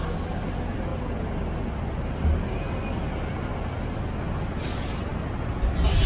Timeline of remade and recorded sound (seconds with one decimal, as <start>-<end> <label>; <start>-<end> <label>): 0.0-6.1 recorded